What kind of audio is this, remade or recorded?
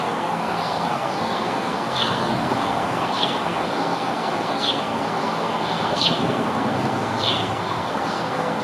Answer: remade